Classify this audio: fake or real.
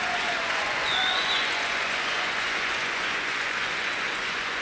fake